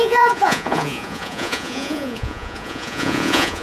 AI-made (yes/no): yes